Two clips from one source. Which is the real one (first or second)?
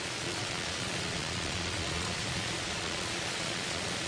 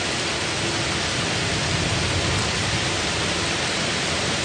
second